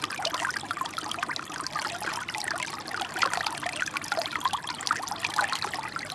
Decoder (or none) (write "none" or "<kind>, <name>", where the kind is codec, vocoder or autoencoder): none